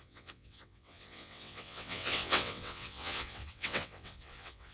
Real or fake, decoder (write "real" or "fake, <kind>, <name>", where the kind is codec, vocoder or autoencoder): fake, vocoder, WaveNeXt